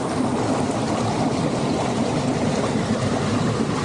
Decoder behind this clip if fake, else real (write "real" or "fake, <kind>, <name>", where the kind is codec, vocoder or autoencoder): real